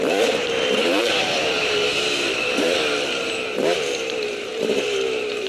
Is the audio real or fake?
fake